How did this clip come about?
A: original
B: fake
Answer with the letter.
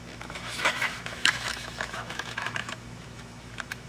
B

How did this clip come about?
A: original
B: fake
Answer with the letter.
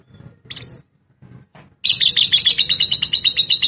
A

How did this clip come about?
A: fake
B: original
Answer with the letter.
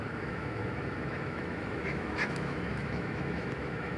A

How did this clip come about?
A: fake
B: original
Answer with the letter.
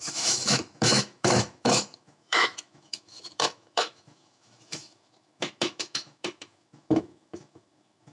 A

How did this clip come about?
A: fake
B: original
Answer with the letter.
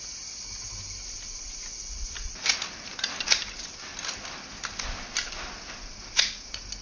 B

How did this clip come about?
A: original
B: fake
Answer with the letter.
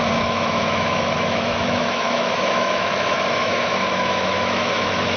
B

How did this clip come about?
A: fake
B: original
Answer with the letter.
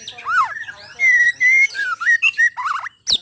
B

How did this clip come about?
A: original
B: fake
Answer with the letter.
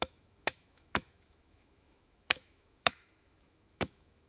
B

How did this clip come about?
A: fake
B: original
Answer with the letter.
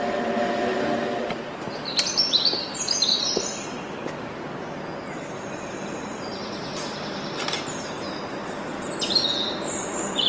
B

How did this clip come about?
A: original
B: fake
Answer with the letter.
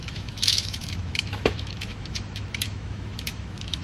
B